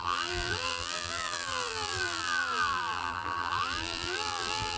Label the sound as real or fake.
fake